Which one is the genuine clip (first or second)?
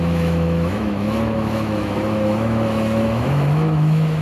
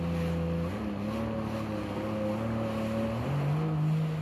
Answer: second